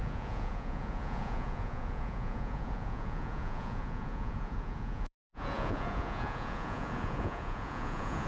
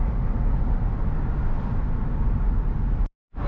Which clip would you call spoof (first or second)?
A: first